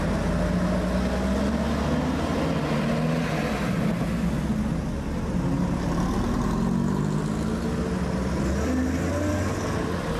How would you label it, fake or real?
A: real